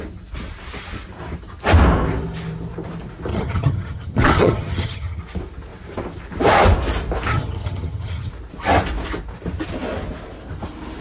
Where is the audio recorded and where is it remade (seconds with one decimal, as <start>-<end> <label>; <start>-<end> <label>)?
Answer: 0.0-3.3 recorded; 3.3-5.2 remade; 5.2-7.3 recorded; 7.3-8.3 remade; 8.3-11.0 recorded